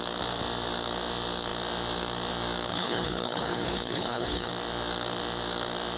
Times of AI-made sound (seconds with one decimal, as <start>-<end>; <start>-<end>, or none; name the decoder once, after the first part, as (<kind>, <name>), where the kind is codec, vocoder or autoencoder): 2.7-4.5 (codec, HILCodec)